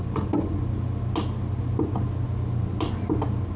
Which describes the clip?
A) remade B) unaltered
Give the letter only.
B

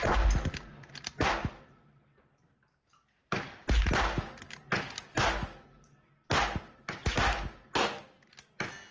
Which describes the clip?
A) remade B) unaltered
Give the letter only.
B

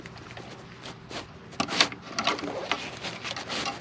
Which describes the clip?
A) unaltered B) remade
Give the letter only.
A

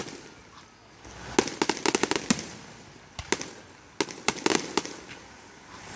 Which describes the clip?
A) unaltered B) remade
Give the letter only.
A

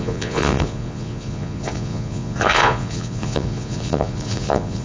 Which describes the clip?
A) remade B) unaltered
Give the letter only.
A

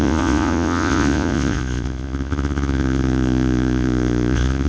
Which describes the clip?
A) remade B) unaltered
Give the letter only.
A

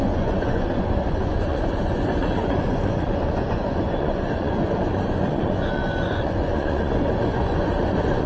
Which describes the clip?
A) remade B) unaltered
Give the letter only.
A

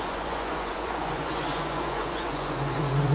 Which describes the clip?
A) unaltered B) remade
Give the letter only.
B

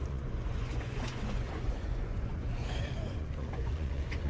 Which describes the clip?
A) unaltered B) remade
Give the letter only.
B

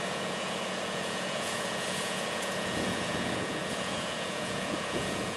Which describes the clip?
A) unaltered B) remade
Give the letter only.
B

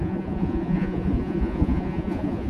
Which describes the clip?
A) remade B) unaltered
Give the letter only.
A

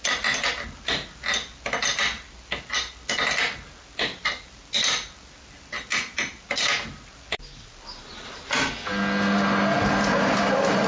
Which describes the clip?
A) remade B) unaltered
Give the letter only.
B